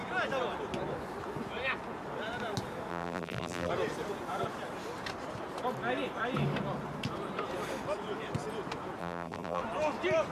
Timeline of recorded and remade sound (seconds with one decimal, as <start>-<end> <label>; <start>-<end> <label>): 0.0-2.9 recorded; 2.9-3.7 remade; 3.7-9.0 recorded; 9.0-9.6 remade; 9.6-10.3 recorded